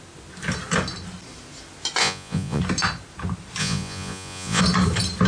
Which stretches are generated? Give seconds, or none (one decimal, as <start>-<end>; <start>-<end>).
2.0-2.6; 3.6-4.6